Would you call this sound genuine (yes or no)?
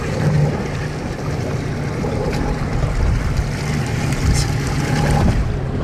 yes